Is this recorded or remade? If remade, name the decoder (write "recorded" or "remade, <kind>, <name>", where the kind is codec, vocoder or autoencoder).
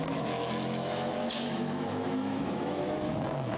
remade, autoencoder, DAC-VAE